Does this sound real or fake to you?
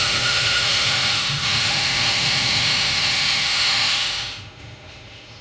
fake